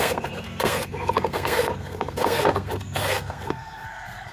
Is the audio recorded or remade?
remade